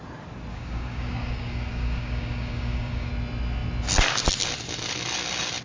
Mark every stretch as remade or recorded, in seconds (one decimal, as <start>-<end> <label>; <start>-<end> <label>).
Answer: 0.0-0.5 recorded; 0.5-3.1 remade; 3.1-5.6 recorded